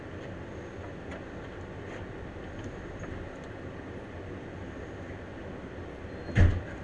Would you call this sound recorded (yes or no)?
yes